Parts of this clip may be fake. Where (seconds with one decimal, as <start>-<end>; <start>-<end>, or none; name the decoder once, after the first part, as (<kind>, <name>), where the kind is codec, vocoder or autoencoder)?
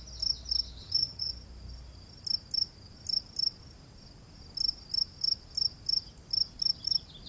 0.8-1.3 (vocoder, HiFi-GAN)